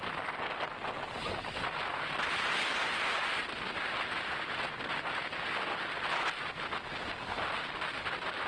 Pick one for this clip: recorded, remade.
recorded